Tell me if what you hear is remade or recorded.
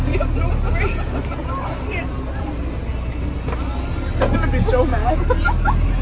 recorded